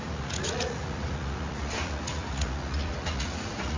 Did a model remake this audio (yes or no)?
yes